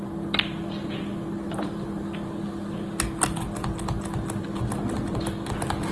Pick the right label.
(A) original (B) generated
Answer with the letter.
A